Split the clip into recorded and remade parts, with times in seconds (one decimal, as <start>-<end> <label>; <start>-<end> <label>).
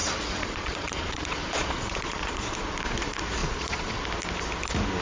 0.0-2.5 remade; 2.5-3.4 recorded; 3.4-4.0 remade; 4.0-5.0 recorded